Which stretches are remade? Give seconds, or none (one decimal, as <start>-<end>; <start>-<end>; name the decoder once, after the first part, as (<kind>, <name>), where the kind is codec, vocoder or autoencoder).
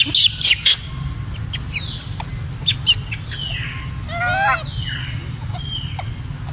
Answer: 5.2-6.1 (vocoder, BigVGAN v2)